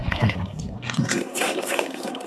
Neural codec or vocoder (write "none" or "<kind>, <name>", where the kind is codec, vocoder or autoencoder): codec, SNAC